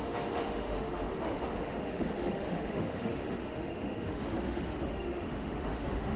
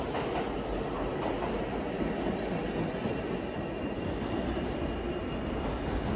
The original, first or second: second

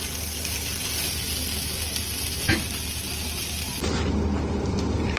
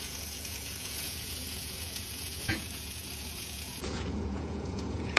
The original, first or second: first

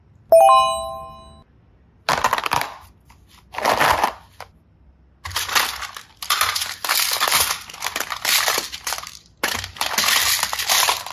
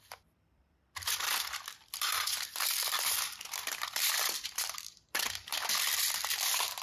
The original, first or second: first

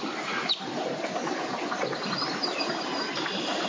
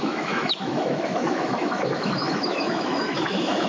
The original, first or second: first